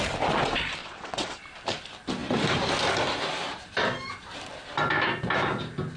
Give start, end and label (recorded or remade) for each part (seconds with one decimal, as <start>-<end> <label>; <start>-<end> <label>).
0.0-0.8 recorded; 0.8-1.4 remade; 1.4-6.0 recorded